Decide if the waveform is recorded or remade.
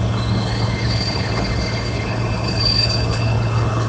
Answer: remade